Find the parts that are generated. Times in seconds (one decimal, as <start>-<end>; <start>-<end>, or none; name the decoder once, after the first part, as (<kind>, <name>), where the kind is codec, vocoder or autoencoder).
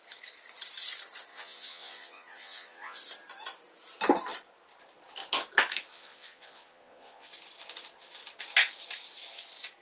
1.3-3.0 (vocoder, Vocos); 5.9-7.3